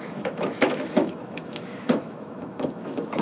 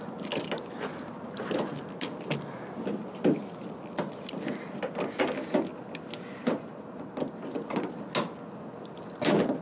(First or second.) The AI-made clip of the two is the first